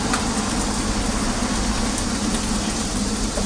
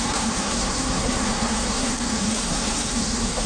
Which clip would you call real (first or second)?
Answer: first